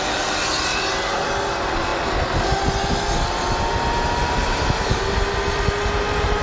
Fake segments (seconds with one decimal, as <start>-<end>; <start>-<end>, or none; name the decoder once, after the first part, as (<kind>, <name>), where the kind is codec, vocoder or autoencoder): none